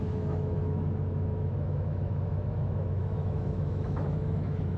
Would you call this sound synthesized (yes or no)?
yes